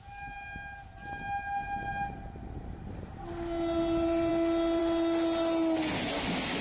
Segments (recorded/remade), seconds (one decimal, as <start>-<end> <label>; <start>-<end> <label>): 0.0-6.6 recorded